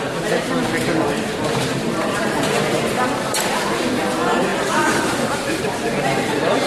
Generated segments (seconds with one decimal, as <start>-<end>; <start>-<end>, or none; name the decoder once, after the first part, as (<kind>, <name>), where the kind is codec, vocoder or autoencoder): 4.5-5.6 (vocoder, BigVGAN v2)